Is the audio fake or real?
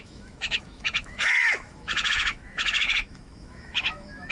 fake